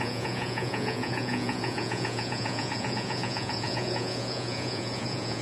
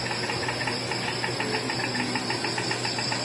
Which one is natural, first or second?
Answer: second